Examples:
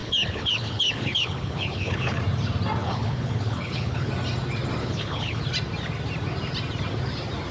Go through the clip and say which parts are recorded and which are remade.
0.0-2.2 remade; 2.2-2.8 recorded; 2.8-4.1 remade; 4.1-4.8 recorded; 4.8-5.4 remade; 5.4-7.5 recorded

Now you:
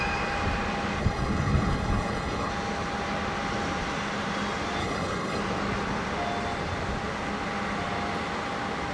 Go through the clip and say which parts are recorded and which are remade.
0.0-1.0 recorded; 1.0-2.5 remade; 2.5-4.8 recorded; 4.8-5.4 remade; 5.4-8.9 recorded

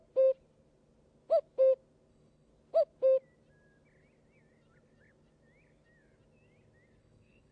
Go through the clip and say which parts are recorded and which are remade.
0.0-2.1 recorded; 2.1-2.5 remade; 2.5-7.0 recorded; 7.0-7.5 remade

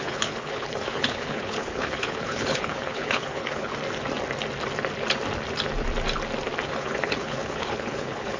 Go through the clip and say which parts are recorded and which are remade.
0.0-3.7 remade; 3.7-6.7 recorded; 6.7-8.4 remade

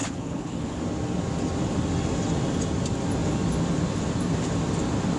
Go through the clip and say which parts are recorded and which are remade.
0.0-0.8 remade; 0.8-5.2 recorded

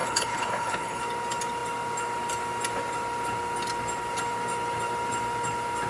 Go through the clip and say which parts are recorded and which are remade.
0.0-1.0 remade; 1.0-5.9 recorded

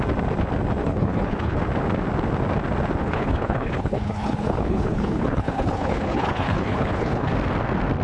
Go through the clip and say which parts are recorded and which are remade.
0.0-0.8 recorded; 0.8-1.6 remade; 1.6-3.0 recorded; 3.0-7.3 remade; 7.3-8.0 recorded